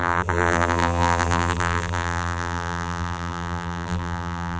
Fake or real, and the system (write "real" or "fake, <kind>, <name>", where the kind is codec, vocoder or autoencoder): fake, vocoder, BigVGAN v2